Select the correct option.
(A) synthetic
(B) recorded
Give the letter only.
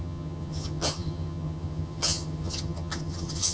A